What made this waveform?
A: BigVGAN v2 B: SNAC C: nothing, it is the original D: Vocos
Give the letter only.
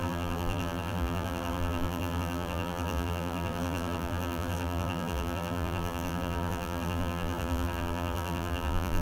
A